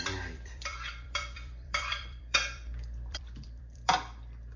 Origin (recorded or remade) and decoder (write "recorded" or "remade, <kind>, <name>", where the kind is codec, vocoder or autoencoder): remade, vocoder, BigVGAN v2